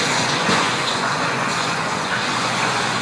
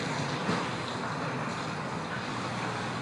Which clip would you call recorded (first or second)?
second